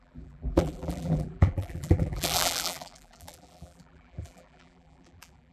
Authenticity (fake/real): fake